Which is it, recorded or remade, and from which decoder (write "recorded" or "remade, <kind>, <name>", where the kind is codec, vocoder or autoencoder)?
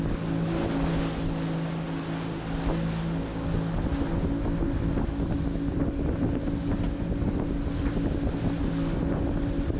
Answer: recorded